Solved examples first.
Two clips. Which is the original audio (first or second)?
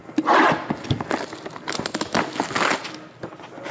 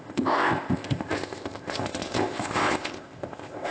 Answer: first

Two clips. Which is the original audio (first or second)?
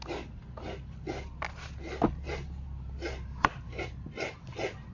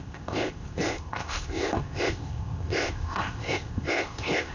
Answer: first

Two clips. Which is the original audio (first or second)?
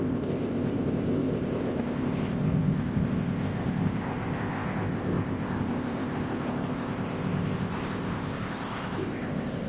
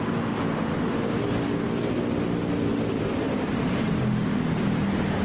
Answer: second